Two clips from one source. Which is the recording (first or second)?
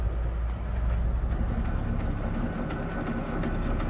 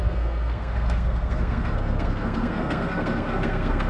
first